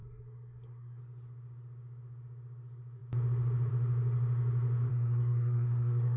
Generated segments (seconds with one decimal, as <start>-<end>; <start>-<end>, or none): 0.0-1.0; 4.9-6.2